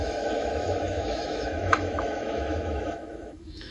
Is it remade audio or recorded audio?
remade